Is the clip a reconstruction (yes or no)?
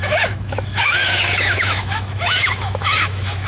yes